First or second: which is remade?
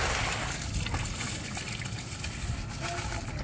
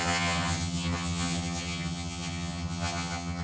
second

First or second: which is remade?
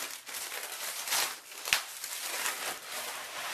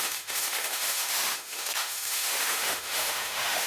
second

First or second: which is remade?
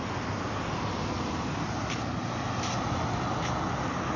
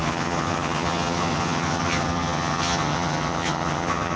second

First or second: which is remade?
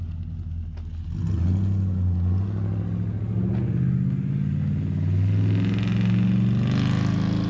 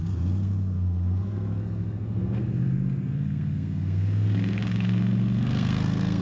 second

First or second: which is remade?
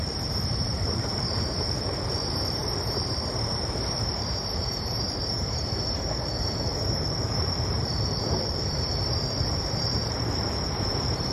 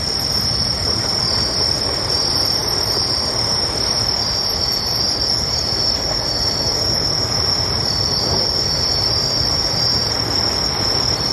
first